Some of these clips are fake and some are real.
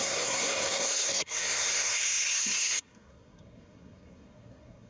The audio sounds fake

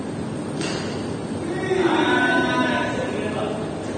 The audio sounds real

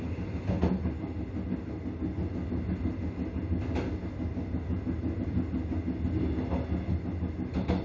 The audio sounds real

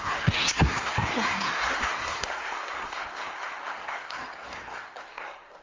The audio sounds fake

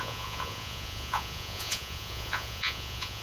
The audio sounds fake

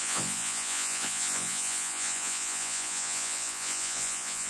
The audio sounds fake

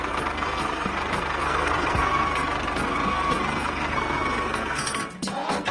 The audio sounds fake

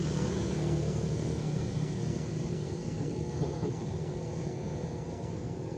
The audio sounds fake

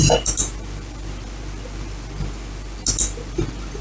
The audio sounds real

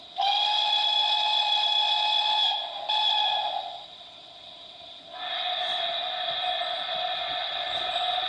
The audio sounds real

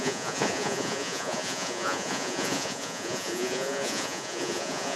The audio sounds fake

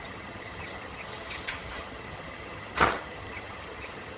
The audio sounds fake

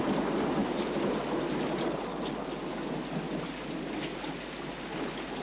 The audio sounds real